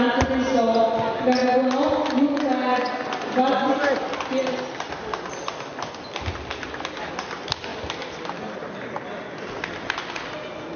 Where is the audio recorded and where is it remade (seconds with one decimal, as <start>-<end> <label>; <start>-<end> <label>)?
0.0-10.8 recorded